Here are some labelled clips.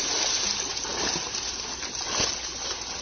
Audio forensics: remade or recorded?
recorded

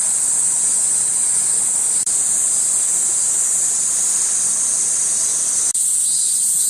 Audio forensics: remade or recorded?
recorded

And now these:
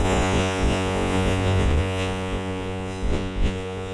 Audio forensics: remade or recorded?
remade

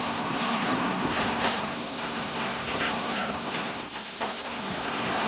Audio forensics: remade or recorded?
remade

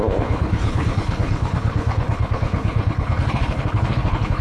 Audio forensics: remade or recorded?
remade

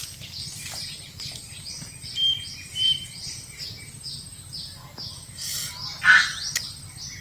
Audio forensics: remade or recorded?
recorded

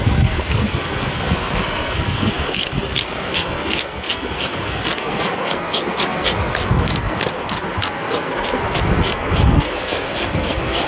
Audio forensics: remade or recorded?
remade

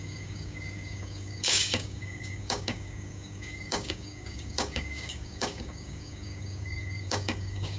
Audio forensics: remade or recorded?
remade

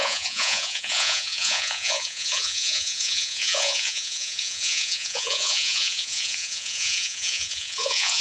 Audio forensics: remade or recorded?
remade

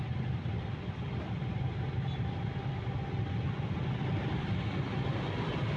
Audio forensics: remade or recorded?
recorded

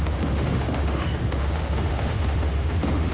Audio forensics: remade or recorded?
remade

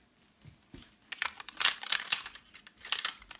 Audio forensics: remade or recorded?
recorded